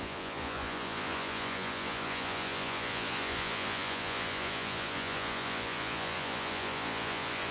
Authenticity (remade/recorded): remade